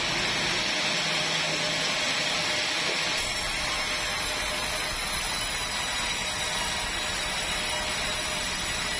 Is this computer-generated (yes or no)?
no